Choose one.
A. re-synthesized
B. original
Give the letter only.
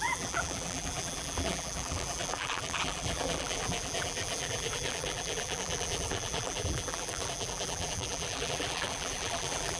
A